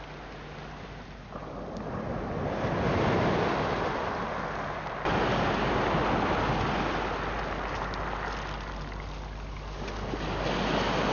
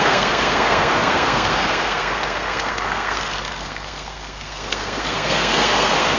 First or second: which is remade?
second